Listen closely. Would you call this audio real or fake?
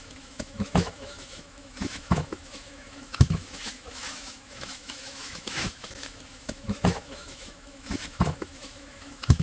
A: fake